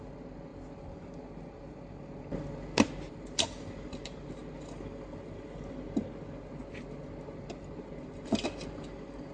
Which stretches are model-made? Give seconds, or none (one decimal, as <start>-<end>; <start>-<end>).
none